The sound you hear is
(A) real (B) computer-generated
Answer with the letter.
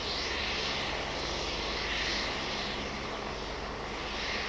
A